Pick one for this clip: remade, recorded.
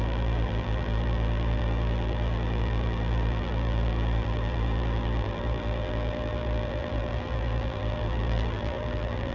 remade